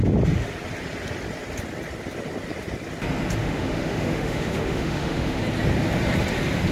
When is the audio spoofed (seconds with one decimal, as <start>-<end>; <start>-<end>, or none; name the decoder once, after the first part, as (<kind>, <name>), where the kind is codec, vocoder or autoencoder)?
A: 3.4-5.4 (autoencoder, DAC-VAE)

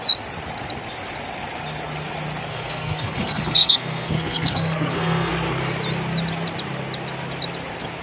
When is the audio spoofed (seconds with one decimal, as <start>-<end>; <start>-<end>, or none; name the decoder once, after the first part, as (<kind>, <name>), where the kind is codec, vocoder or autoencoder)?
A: 2.5-5.3 (codec, SNAC)

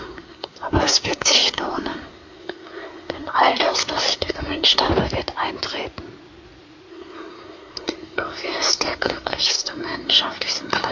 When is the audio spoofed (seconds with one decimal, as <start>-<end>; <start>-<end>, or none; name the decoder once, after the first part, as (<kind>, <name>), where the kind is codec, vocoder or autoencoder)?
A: 0.0-4.9 (codec, SNAC); 6.9-10.9

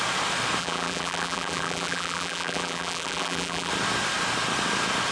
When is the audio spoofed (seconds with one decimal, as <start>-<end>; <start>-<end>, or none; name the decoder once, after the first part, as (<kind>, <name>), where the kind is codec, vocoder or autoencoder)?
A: 0.6-3.7 (vocoder, BigVGAN v2)

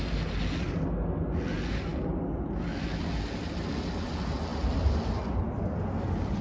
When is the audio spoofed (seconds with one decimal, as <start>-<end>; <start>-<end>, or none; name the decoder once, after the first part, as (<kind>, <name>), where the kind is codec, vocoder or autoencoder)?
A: none

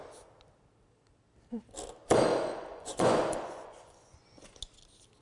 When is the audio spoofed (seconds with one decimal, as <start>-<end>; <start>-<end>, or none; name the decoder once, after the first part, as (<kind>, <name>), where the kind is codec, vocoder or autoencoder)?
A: 2.3-4.6 (vocoder, Vocos)